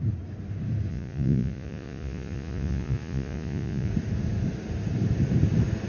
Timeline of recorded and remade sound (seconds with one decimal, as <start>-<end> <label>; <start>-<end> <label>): 0.0-0.9 recorded; 0.9-3.9 remade; 3.9-5.9 recorded